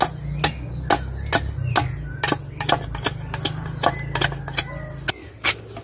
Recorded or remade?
recorded